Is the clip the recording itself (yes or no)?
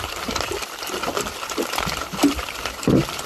no